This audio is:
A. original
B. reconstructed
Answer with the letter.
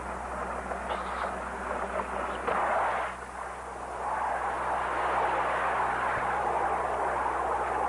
A